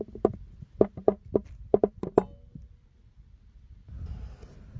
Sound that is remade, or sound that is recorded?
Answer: recorded